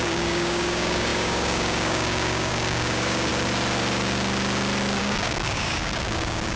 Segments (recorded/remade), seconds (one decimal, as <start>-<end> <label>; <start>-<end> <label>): 0.0-3.3 remade; 3.3-5.0 recorded; 5.0-6.6 remade